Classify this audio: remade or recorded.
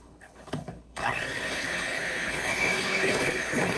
remade